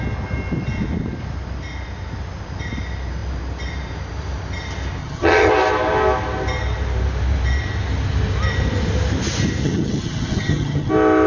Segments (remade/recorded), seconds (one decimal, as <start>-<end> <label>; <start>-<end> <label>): 0.0-5.0 recorded; 5.0-5.5 remade; 5.5-9.6 recorded; 9.6-10.9 remade; 10.9-11.3 recorded

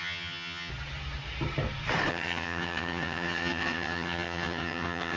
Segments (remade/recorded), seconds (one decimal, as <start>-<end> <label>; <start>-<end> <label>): 0.0-0.7 remade; 0.7-2.1 recorded; 2.1-5.2 remade

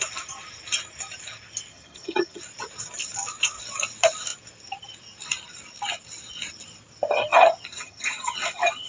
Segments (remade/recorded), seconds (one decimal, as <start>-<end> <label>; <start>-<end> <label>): 0.0-1.7 recorded; 1.7-2.4 remade; 2.4-7.7 recorded; 7.7-8.9 remade

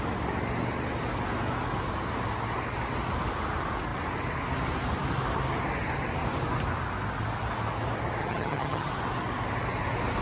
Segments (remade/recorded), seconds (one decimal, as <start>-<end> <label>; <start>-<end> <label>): 0.0-8.2 recorded; 8.2-8.9 remade; 8.9-10.2 recorded